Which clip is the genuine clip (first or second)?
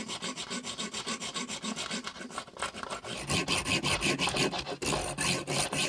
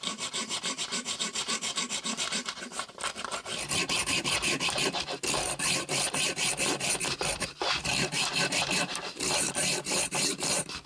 first